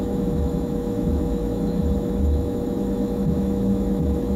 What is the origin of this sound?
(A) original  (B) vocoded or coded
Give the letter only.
B